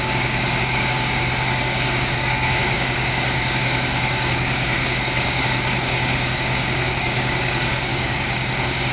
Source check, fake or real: fake